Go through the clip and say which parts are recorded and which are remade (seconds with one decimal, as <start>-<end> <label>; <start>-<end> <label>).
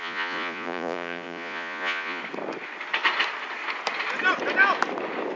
0.0-2.2 remade; 2.2-5.4 recorded